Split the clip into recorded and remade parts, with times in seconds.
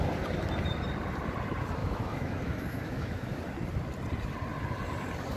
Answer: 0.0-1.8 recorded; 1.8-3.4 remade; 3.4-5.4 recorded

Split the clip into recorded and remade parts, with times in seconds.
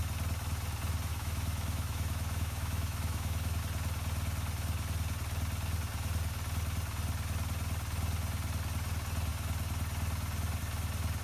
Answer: 0.0-1.1 recorded; 1.1-3.6 remade; 3.6-11.2 recorded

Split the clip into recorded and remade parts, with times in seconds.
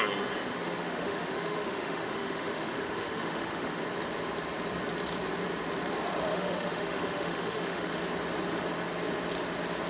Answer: 0.0-0.5 recorded; 0.5-3.8 remade; 3.8-6.3 recorded; 6.3-8.0 remade; 8.0-9.9 recorded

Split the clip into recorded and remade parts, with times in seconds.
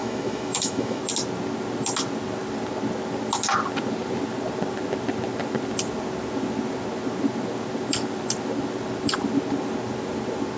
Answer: 0.0-1.0 remade; 1.0-10.6 recorded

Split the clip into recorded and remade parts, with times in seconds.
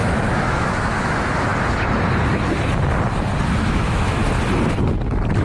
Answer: 0.0-1.5 remade; 1.5-3.6 recorded; 3.6-4.2 remade; 4.2-5.4 recorded